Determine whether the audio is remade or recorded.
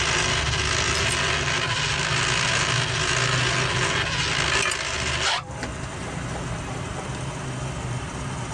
recorded